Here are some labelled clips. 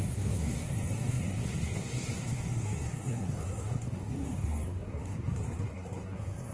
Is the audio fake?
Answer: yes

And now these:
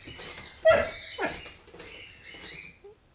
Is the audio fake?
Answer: no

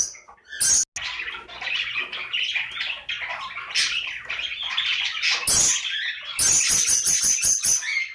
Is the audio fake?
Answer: no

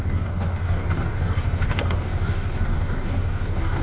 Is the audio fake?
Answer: yes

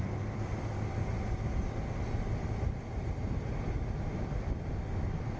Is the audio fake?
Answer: no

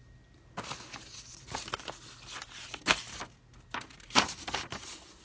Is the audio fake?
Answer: no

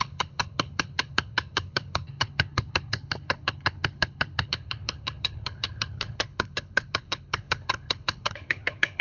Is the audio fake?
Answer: yes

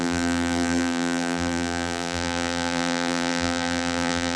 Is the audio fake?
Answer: yes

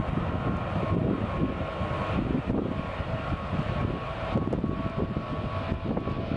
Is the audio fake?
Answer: no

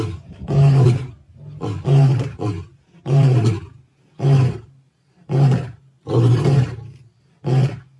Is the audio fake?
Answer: no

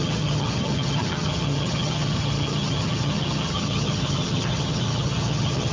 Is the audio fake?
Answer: yes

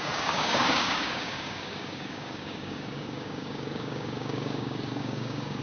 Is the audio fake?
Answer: yes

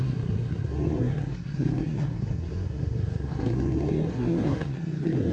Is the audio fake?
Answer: yes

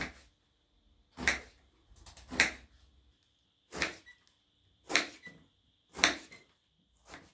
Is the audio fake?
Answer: no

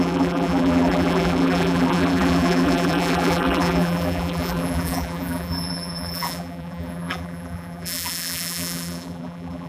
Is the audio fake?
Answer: yes